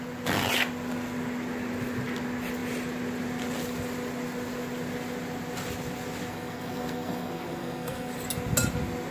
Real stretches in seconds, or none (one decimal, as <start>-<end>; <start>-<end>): 0.0-6.3; 8.1-9.1